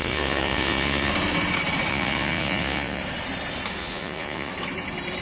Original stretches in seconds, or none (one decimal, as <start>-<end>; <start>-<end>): 1.1-1.9; 3.0-3.8; 4.5-5.2